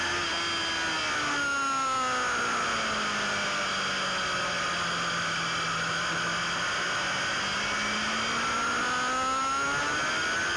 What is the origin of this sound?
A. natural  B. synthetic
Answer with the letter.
A